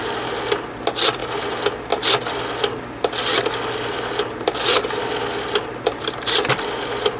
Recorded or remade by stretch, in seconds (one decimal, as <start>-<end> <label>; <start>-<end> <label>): 0.0-7.2 recorded